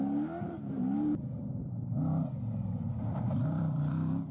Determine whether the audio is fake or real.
fake